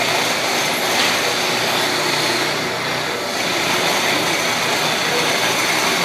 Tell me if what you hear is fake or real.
real